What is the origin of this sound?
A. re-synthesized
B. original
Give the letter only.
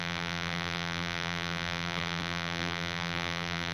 A